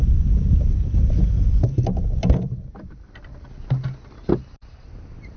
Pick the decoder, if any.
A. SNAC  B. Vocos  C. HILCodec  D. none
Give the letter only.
D